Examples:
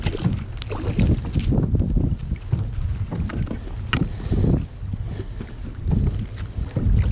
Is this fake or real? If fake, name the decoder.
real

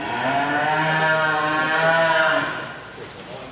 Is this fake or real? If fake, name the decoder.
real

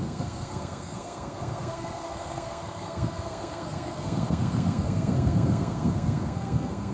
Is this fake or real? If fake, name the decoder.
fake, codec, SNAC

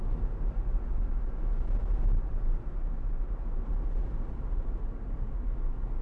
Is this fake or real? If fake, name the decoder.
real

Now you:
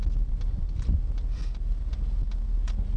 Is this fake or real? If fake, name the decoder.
real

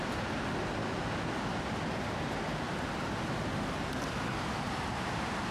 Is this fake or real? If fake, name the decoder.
real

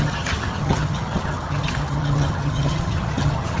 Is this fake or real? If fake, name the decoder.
fake, vocoder, HiFi-GAN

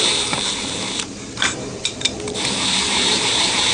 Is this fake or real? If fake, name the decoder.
fake, vocoder, BigVGAN v2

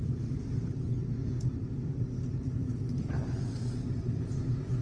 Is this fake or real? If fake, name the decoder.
real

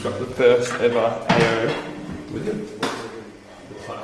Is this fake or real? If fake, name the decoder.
real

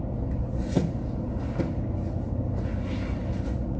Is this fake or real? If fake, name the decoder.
real